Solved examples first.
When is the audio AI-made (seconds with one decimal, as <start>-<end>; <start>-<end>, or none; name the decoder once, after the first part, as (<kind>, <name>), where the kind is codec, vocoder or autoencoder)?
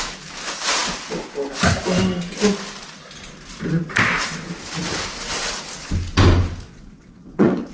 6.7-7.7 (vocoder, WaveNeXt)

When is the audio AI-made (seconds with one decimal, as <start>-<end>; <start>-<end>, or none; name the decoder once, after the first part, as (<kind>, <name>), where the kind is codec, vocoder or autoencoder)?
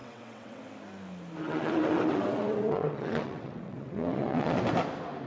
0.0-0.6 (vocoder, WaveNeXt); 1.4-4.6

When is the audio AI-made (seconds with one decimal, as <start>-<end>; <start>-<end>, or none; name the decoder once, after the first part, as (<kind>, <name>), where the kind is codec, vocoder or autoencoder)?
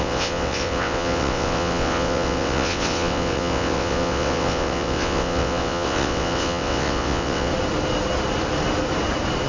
0.0-7.5 (vocoder, WaveNeXt)